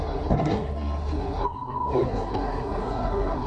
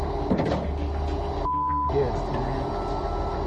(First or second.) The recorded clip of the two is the second